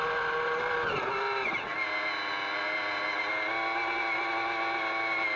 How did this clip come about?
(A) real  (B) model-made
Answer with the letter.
A